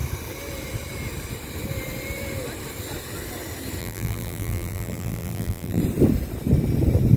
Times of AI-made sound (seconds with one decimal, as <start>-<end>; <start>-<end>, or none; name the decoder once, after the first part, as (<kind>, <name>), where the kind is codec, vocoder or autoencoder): 3.8-5.8 (vocoder, BigVGAN v2)